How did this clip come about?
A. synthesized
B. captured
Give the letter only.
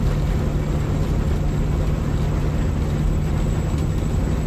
B